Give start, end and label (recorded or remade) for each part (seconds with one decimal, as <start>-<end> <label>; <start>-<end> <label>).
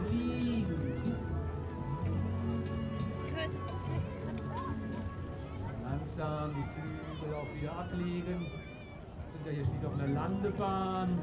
0.0-11.2 recorded